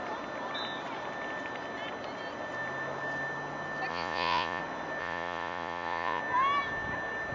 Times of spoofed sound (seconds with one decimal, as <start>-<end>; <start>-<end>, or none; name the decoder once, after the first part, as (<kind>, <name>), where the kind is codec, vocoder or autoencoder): 3.9-4.6 (vocoder, Vocos); 5.0-6.2